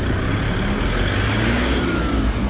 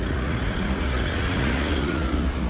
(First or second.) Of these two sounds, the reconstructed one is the second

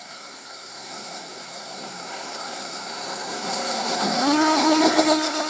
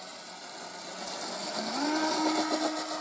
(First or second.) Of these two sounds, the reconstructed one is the first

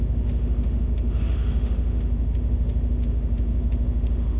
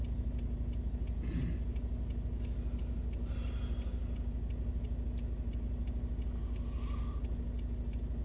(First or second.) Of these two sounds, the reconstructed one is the first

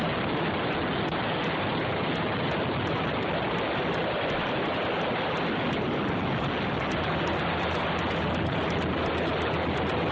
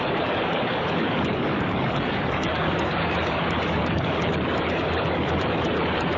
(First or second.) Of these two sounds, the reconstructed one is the second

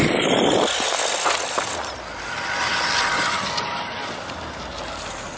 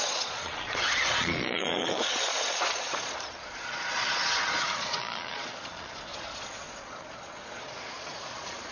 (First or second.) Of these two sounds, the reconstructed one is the second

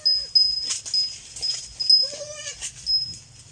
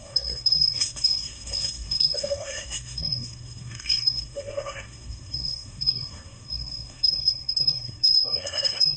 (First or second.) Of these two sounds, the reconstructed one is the second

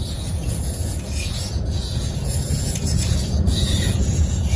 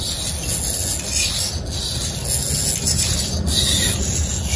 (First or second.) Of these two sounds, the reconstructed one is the first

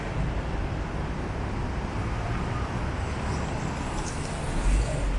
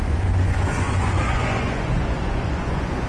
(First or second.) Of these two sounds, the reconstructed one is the second